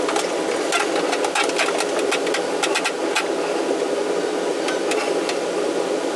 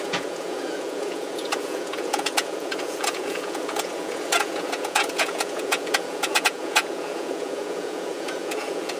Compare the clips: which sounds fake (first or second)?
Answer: second